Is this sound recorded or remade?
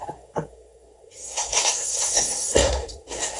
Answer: remade